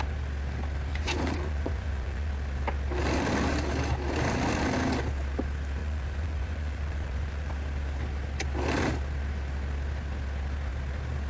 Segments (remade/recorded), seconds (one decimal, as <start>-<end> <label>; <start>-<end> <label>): 0.0-0.9 recorded; 0.9-2.3 remade; 2.3-5.8 recorded; 5.8-7.5 remade; 7.5-11.3 recorded